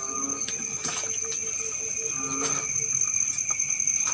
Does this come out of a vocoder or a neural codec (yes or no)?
no